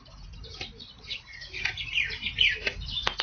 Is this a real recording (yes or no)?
yes